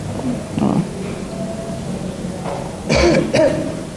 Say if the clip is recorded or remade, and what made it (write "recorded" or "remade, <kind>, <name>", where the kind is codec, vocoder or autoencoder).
recorded